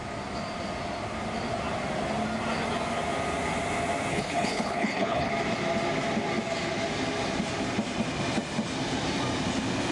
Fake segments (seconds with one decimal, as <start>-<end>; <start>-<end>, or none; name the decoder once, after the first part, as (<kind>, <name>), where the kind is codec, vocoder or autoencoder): 4.1-5.3 (codec, HILCodec)